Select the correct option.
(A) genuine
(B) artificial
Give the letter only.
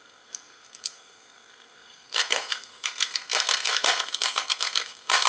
B